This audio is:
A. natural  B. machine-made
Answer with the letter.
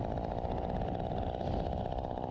A